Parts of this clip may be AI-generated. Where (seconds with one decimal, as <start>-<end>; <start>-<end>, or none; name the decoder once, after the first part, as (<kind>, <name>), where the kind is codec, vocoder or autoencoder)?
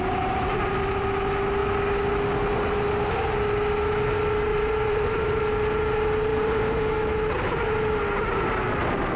4.5-5.4 (vocoder, BigVGAN v2); 6.3-6.8